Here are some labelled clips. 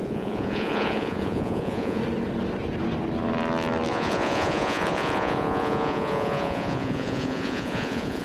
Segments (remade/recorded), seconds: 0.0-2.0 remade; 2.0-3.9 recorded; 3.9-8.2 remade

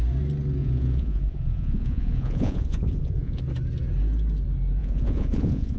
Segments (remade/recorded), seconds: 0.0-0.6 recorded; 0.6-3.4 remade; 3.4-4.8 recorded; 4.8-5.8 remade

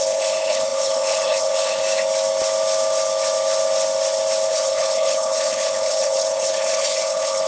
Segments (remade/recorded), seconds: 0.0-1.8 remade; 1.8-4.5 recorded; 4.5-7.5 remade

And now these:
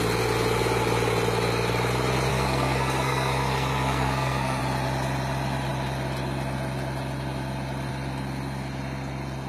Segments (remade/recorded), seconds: 0.0-2.3 recorded; 2.3-4.6 remade; 4.6-9.5 recorded